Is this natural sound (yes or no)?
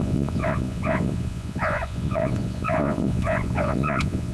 no